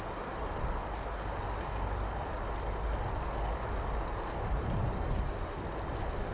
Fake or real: real